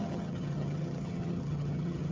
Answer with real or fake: fake